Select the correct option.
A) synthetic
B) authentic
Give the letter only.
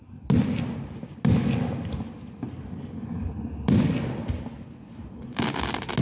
B